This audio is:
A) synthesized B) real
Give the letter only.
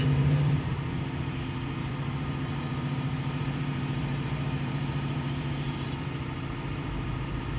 A